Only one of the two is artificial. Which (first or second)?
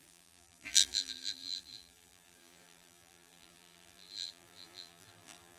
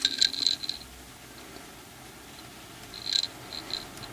first